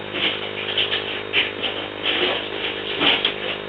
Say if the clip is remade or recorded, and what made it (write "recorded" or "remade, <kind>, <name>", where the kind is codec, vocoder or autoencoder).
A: recorded